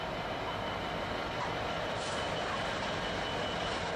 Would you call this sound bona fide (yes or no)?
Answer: yes